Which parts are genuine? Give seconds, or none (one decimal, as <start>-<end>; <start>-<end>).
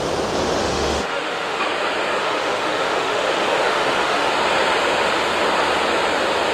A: 0.0-0.6; 1.6-2.2; 4.3-6.5